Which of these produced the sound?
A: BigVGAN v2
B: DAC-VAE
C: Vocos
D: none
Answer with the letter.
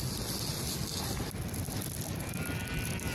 D